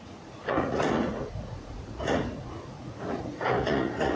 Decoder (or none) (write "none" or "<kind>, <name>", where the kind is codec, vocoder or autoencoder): vocoder, Vocos